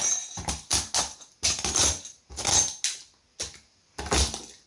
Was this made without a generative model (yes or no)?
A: yes